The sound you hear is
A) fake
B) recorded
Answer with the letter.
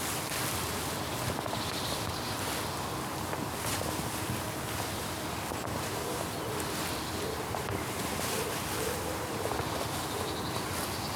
B